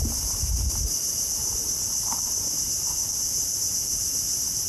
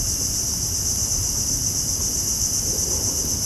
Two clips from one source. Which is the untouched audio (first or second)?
second